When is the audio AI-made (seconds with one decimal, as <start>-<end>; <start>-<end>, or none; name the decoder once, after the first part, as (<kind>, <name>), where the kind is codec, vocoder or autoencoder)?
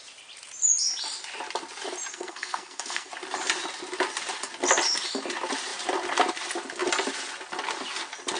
2.1-3.1 (codec, SNAC)